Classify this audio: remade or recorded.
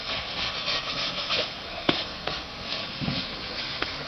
remade